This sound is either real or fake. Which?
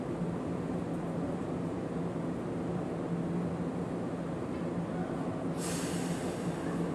real